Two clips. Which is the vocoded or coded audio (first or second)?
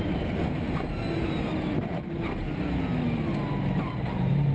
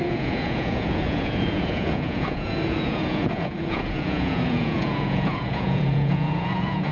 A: second